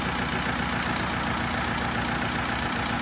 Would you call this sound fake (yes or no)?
no